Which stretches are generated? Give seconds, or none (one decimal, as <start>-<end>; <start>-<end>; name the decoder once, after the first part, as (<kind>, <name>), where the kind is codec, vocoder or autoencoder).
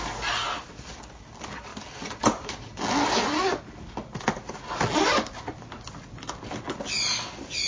none